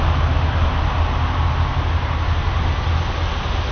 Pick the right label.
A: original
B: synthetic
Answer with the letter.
A